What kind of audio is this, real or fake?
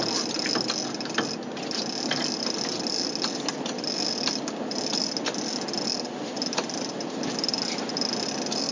real